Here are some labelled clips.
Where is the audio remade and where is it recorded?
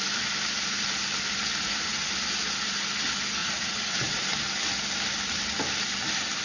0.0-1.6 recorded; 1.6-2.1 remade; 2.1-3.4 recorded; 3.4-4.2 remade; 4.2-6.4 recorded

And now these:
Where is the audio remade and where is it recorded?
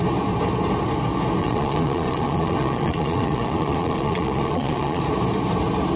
0.0-1.4 recorded; 1.4-5.0 remade; 5.0-6.0 recorded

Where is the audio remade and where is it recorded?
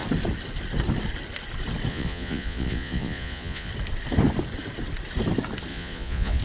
0.0-1.9 recorded; 1.9-3.7 remade; 3.7-5.7 recorded; 5.7-6.4 remade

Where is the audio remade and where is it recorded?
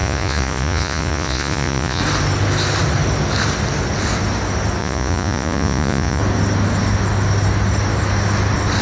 0.0-2.0 remade; 2.0-4.8 recorded; 4.8-6.2 remade; 6.2-8.8 recorded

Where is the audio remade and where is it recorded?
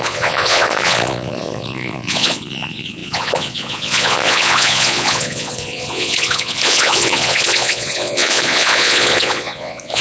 0.0-10.0 remade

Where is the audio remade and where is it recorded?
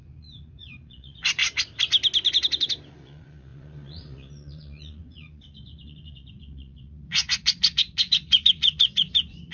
0.0-1.4 remade; 1.4-2.9 recorded; 2.9-9.5 remade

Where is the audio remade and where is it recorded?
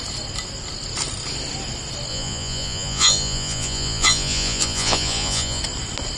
0.0-2.1 recorded; 2.1-5.6 remade; 5.6-6.2 recorded